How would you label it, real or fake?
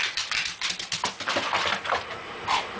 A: fake